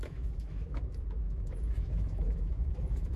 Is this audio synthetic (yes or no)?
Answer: yes